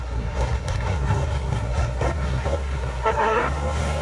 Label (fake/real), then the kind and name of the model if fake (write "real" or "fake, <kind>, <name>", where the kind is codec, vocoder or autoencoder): fake, codec, SNAC